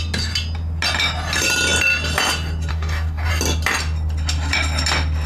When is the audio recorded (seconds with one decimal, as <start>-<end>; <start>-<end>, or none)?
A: 0.0-2.7; 3.3-5.3